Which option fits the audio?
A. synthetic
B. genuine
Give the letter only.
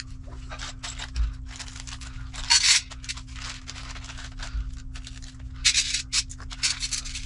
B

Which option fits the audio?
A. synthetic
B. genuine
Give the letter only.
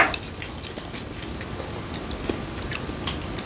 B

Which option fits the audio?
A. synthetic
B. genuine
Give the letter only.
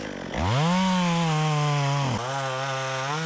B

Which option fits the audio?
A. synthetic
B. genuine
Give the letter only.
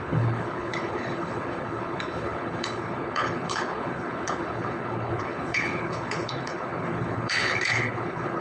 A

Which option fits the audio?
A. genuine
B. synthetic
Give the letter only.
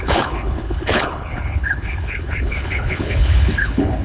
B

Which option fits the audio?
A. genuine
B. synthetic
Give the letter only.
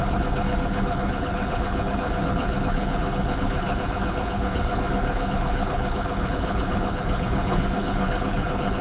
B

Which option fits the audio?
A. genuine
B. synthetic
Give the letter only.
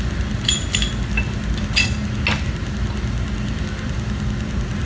A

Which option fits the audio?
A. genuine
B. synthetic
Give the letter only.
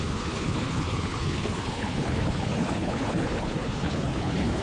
B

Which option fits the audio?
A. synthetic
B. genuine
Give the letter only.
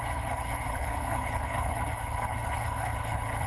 A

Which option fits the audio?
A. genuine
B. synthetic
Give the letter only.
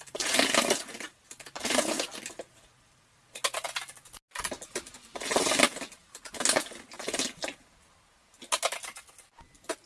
A